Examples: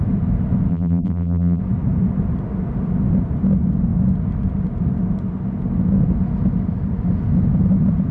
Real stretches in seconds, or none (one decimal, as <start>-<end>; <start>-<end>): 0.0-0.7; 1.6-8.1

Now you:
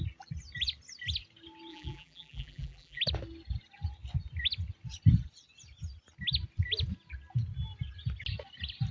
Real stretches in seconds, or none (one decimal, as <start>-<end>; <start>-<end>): 0.0-1.7; 3.0-8.9

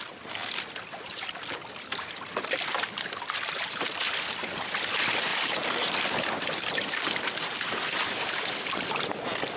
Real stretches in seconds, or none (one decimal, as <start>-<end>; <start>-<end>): 5.3-8.3

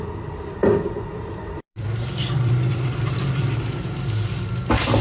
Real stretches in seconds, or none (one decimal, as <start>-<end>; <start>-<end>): 0.0-0.6; 3.6-5.0

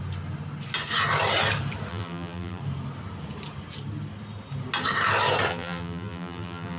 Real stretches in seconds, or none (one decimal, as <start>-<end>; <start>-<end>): 0.0-1.9; 2.6-5.5

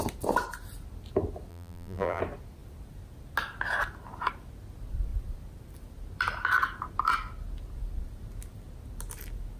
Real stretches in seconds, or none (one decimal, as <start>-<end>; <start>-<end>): 0.0-1.5; 2.2-9.6

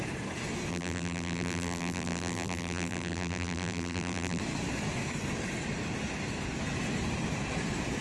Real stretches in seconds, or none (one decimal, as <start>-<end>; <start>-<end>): 0.0-0.7; 4.4-8.0

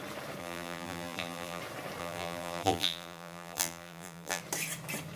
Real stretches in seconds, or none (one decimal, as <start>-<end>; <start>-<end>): 0.0-0.4; 1.6-2.0; 4.4-5.2